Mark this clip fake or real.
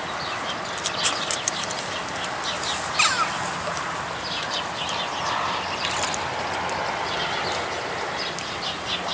real